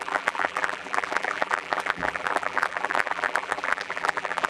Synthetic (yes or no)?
yes